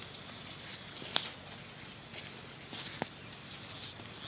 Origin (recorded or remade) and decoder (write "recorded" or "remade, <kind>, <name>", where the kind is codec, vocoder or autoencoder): recorded